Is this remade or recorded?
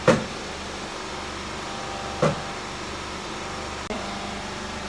recorded